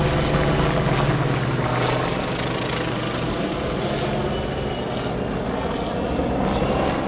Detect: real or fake real